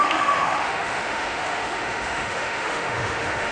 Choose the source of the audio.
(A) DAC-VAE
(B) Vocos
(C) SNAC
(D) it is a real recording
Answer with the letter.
A